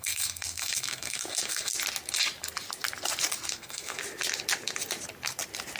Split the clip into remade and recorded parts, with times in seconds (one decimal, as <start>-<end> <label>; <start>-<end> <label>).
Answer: 0.0-1.7 remade; 1.7-3.5 recorded; 3.5-4.0 remade; 4.0-5.8 recorded